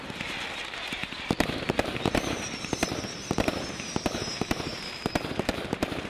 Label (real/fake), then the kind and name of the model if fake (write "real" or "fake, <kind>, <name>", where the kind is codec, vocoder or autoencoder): fake, vocoder, BigVGAN v2